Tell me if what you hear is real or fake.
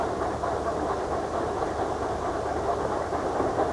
real